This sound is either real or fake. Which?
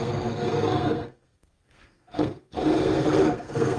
fake